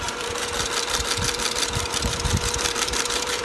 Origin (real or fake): fake